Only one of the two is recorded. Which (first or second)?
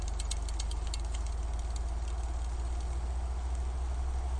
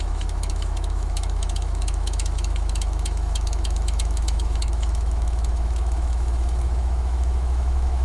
first